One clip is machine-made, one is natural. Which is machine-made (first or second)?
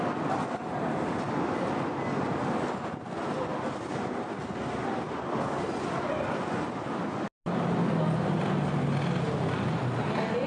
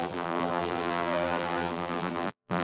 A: second